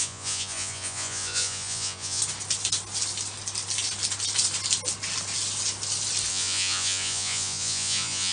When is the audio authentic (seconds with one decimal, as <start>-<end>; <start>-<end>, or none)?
2.2-6.3